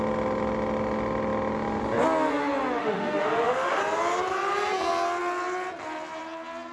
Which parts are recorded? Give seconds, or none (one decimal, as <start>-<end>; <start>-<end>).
0.0-2.8; 3.8-6.7